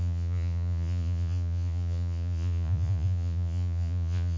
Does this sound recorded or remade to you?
remade